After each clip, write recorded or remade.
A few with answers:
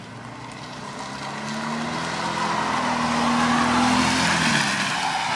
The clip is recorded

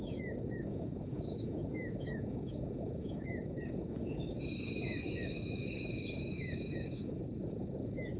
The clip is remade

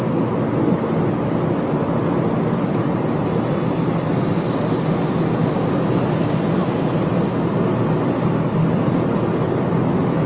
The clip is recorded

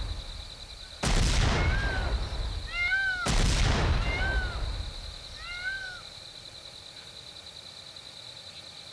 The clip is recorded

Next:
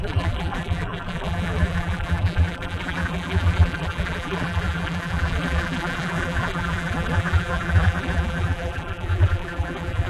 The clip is remade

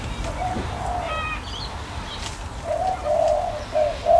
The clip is recorded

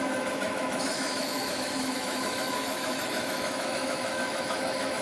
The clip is remade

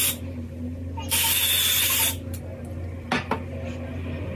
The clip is recorded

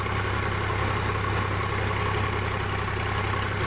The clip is recorded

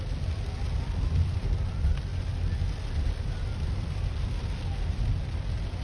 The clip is recorded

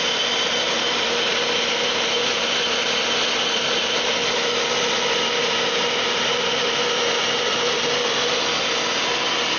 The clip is recorded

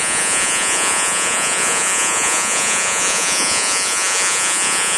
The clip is remade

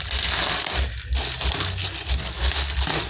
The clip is recorded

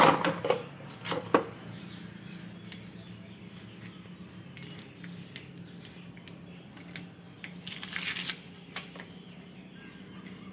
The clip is recorded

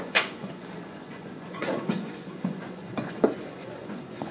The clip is remade